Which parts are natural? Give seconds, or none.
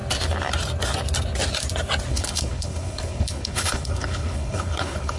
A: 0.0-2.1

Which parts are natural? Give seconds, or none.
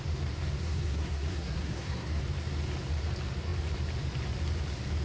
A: 0.0-0.6; 2.2-5.0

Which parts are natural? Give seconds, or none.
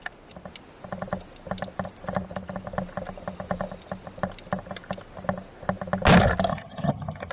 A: 0.0-6.5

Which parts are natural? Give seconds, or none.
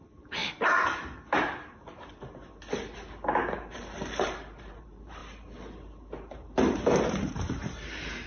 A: 0.4-3.7; 5.2-7.1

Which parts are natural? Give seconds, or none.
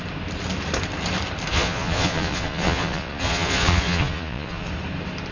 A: 0.0-1.5; 4.7-5.3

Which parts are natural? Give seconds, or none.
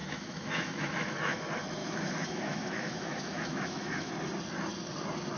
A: 1.4-1.8; 4.1-5.4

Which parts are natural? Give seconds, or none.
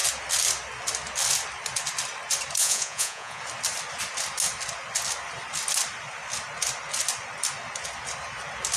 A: 0.0-2.6; 3.4-8.8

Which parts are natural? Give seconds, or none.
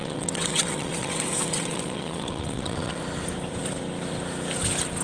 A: 3.0-5.0